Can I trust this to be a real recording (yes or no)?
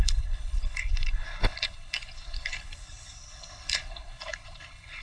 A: no